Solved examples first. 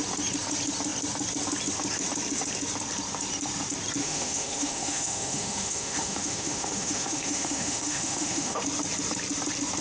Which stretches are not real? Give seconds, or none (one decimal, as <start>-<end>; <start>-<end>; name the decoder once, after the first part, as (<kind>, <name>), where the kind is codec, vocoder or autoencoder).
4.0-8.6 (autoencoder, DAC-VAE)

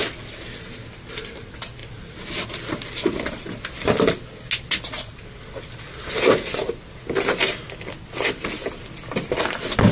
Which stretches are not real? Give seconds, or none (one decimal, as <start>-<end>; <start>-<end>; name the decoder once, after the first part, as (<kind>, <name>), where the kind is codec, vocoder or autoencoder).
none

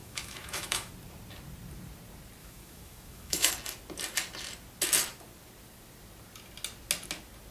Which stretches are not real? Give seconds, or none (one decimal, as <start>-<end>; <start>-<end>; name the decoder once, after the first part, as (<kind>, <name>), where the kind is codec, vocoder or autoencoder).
0.0-0.9 (autoencoder, DAC-VAE); 2.4-3.5

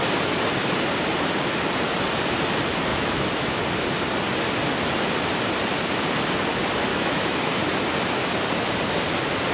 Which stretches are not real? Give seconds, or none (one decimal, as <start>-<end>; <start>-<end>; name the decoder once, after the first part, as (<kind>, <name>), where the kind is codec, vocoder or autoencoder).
2.9-3.6 (autoencoder, DAC-VAE); 6.9-7.5